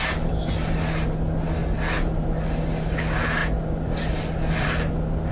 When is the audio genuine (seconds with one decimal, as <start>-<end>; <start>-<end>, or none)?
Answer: 0.0-5.3